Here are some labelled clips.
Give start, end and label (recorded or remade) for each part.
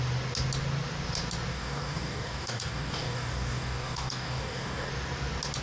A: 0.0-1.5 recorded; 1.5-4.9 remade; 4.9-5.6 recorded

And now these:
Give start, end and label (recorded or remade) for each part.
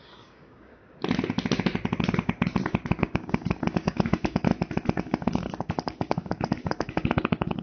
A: 0.0-0.8 remade; 0.8-3.0 recorded; 3.0-4.5 remade; 4.5-5.0 recorded; 5.0-7.6 remade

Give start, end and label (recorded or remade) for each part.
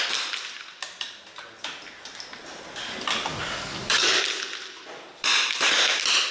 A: 0.0-3.3 recorded; 3.3-4.2 remade; 4.2-6.3 recorded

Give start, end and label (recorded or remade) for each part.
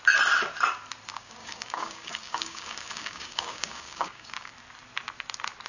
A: 0.0-1.1 recorded; 1.1-4.5 remade; 4.5-5.7 recorded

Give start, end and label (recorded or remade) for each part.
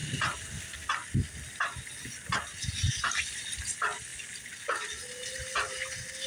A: 0.0-6.3 recorded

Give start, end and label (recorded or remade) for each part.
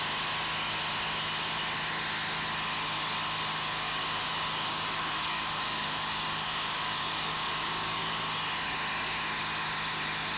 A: 0.0-3.5 recorded; 3.5-8.2 remade; 8.2-10.4 recorded